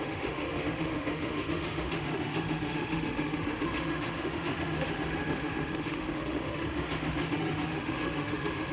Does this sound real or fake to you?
fake